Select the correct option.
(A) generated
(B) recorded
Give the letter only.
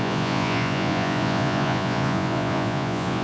A